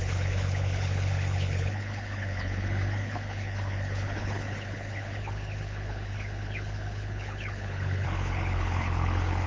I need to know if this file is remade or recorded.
remade